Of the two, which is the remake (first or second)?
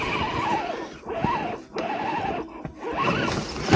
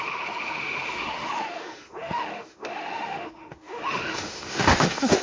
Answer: second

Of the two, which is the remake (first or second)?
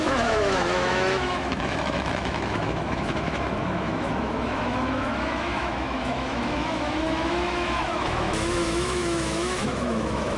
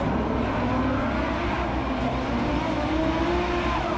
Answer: first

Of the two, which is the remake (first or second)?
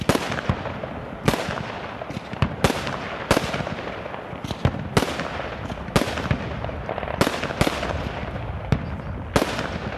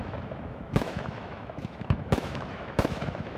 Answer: second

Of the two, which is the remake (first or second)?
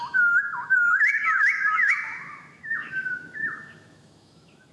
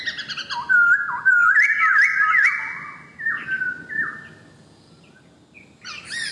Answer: first